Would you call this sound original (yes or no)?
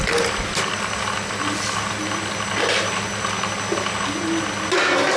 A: yes